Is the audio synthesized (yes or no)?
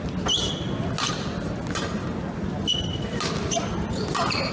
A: no